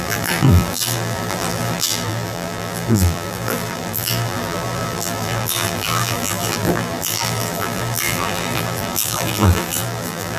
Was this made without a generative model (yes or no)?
no